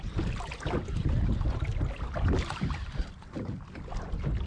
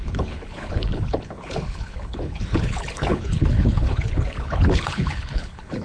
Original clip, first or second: first